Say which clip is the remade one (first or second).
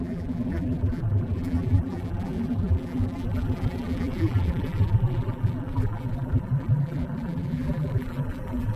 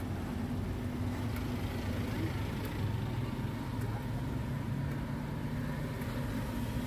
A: first